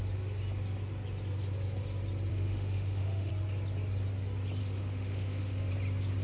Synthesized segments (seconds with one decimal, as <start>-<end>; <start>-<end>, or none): 2.3-3.3; 4.6-5.7